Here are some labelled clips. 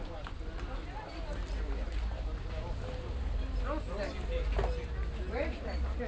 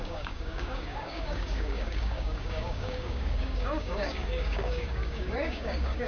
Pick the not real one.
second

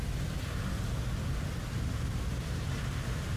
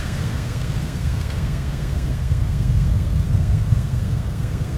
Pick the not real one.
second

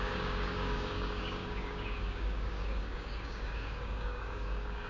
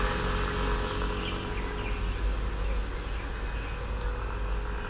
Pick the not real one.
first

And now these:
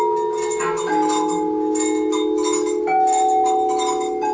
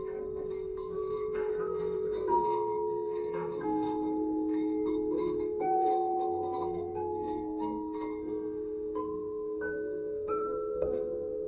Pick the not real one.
second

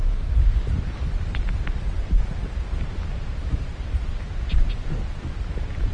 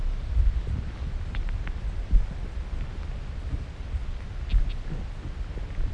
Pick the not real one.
first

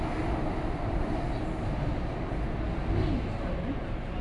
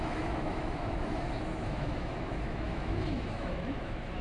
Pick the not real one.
second